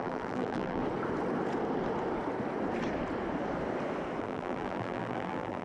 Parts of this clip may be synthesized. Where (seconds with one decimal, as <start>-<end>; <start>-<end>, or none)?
0.0-0.8; 4.2-5.6